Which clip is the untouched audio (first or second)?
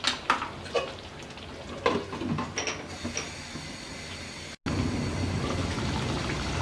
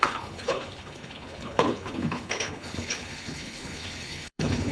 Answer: first